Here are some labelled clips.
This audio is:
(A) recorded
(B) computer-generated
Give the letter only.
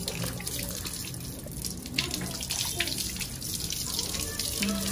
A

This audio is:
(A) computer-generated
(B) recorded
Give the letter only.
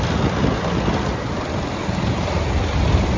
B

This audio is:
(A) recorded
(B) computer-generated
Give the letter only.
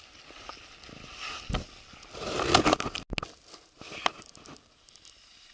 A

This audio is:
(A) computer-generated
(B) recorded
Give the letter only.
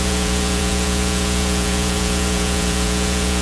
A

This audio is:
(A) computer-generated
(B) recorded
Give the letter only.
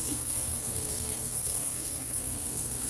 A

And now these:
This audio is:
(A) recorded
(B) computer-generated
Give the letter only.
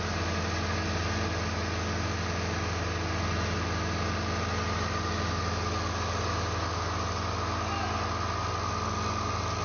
A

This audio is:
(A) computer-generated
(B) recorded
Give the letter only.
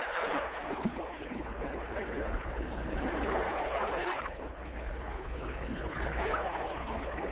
A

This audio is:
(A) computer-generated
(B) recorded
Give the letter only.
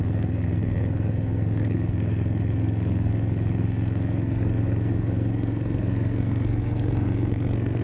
A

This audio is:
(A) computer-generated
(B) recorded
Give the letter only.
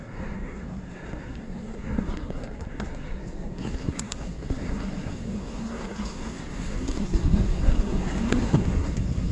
A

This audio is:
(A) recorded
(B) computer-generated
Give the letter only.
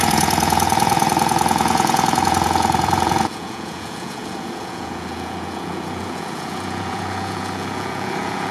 B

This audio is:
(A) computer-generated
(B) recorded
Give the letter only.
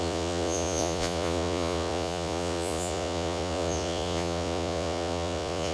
A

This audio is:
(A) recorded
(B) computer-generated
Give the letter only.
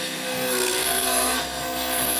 B